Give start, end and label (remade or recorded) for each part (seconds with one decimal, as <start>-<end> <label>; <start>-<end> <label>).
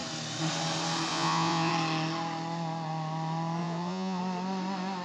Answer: 0.0-1.1 recorded; 1.1-1.7 remade; 1.7-3.6 recorded; 3.6-4.2 remade; 4.2-5.0 recorded